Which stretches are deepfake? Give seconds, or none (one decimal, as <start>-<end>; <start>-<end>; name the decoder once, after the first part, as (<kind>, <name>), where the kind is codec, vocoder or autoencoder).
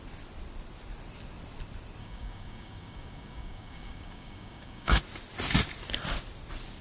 2.0-5.0 (codec, DAC)